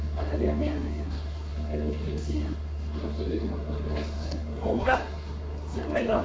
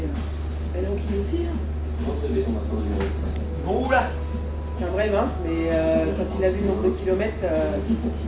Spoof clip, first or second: first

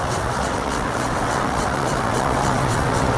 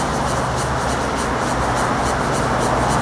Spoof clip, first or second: first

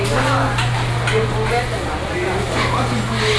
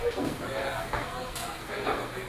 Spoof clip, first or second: second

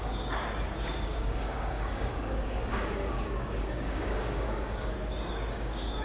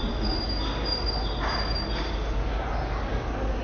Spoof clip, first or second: first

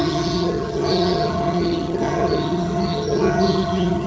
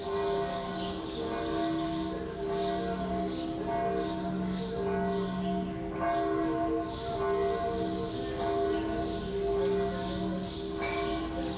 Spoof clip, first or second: first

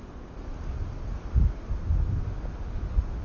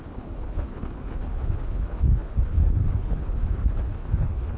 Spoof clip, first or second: second